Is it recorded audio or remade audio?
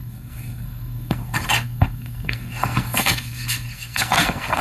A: remade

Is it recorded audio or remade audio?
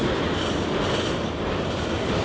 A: remade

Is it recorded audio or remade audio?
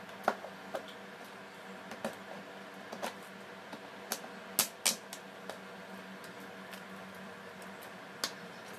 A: recorded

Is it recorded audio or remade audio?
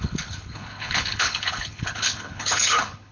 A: remade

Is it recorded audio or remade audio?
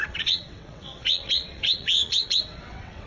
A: remade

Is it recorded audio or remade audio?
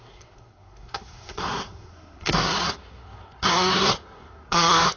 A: remade